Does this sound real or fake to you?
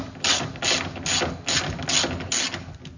real